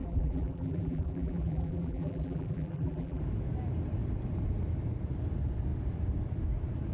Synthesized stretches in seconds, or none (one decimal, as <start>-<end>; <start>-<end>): 0.0-3.2